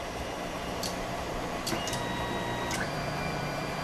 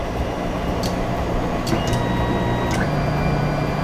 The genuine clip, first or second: second